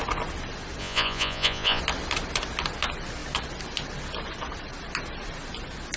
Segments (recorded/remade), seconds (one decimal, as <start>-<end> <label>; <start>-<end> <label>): 0.0-0.8 recorded; 0.8-1.8 remade; 1.8-6.0 recorded

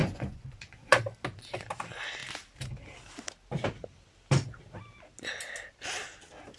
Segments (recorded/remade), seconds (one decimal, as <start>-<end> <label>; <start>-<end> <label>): 0.0-1.0 remade; 1.0-6.6 recorded

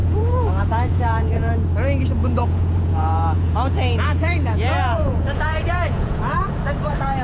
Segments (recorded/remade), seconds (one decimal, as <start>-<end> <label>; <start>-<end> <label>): 0.0-1.5 remade; 1.5-2.2 recorded; 2.2-6.5 remade; 6.5-7.2 recorded

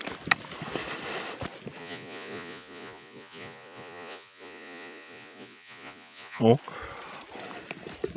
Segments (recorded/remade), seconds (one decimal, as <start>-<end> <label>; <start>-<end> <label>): 0.0-1.8 recorded; 1.8-6.4 remade; 6.4-8.2 recorded